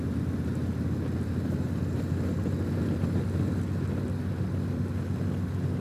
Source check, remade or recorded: recorded